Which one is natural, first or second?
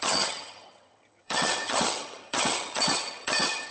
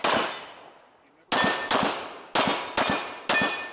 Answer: second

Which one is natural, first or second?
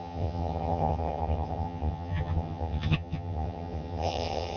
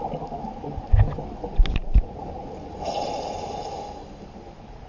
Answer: second